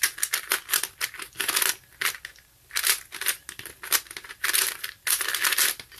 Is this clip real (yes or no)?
yes